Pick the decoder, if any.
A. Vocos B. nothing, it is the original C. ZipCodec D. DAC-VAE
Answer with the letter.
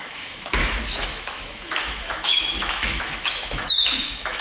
D